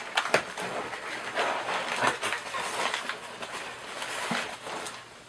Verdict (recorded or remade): recorded